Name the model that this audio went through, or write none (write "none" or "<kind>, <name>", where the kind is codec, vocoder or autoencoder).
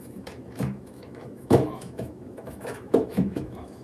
autoencoder, DAC-VAE